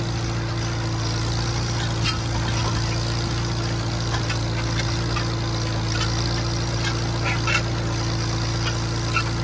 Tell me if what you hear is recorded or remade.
recorded